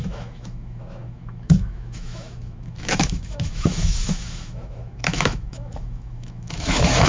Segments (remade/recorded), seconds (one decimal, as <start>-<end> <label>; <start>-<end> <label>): 0.0-7.1 remade